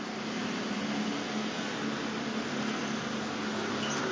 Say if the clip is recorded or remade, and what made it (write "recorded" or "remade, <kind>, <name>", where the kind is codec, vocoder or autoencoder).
recorded